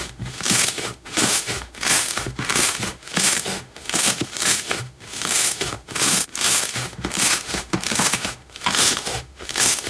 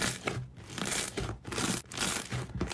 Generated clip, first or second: first